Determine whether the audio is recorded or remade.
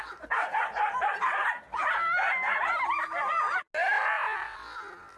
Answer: recorded